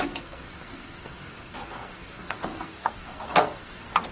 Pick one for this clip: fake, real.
fake